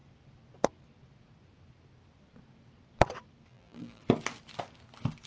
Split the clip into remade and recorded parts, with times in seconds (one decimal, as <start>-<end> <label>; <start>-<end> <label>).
0.0-3.5 recorded; 3.5-4.0 remade; 4.0-5.3 recorded